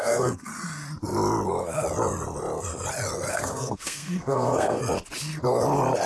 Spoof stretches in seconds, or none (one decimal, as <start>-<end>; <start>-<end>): 0.0-0.5; 3.3-4.8